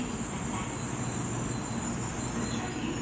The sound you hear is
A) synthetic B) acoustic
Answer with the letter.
B